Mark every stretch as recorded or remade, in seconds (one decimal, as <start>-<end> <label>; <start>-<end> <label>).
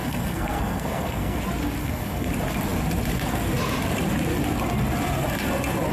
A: 0.0-1.4 remade; 1.4-1.8 recorded; 1.8-2.3 remade; 2.3-5.9 recorded